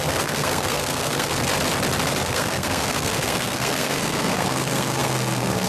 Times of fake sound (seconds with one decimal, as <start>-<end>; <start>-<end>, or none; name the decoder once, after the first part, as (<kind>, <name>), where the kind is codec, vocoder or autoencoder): 0.0-1.3 (codec, SNAC); 2.2-5.7